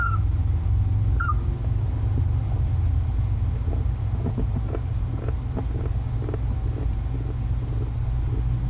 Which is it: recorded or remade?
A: recorded